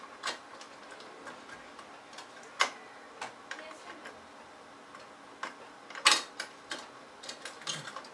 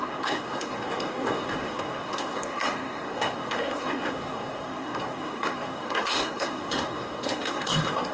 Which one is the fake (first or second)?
second